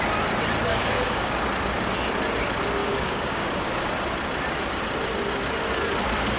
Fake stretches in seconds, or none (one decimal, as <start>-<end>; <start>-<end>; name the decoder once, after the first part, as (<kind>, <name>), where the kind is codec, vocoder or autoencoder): 0.7-1.3 (codec, DAC); 2.8-3.9